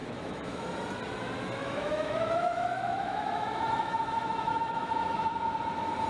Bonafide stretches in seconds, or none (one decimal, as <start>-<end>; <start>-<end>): 0.6-1.6; 5.3-6.1